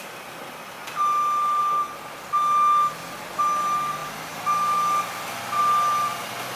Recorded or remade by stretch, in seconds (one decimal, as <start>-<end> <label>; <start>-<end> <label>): 0.0-6.6 recorded